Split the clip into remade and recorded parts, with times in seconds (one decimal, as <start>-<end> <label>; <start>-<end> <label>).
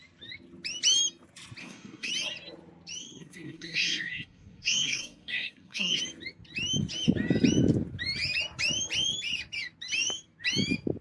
0.0-1.6 recorded; 1.6-2.1 remade; 2.1-3.0 recorded; 3.0-6.0 remade; 6.0-11.0 recorded